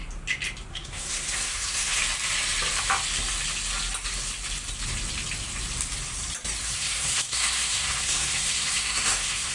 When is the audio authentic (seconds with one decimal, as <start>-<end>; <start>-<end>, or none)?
0.0-0.7; 2.0-6.6